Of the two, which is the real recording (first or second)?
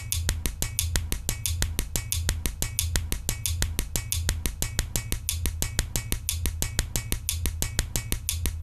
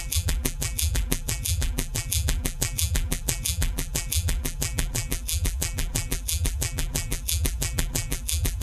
first